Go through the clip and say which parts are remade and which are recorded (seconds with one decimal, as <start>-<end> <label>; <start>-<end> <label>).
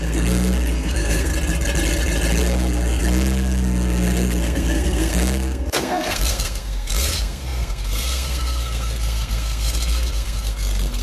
0.0-1.3 remade; 1.3-2.4 recorded; 2.4-11.0 remade